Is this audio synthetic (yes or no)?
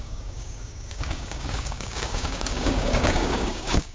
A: yes